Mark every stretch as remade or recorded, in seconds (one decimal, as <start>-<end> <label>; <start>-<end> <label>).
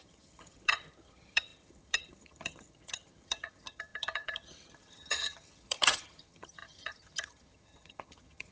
0.0-8.5 remade